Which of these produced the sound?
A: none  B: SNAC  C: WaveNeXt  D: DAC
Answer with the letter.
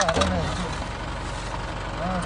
A